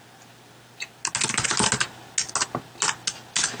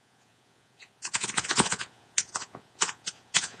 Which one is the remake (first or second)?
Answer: second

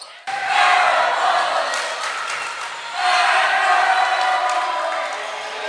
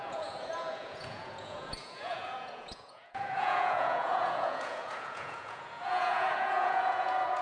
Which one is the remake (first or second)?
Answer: second